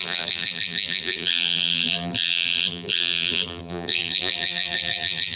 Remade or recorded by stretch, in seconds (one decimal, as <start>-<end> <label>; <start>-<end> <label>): 0.0-5.4 remade